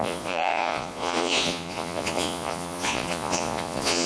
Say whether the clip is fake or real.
fake